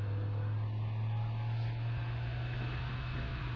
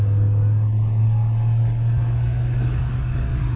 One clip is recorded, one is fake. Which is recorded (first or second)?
first